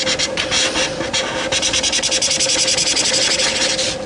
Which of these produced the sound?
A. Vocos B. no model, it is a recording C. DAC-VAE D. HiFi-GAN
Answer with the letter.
B